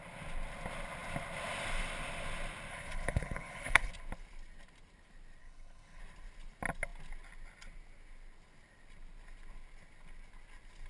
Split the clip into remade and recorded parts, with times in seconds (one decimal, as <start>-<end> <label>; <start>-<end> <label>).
0.0-2.7 recorded; 2.7-3.9 remade; 3.9-5.4 recorded; 5.4-6.0 remade; 6.0-10.9 recorded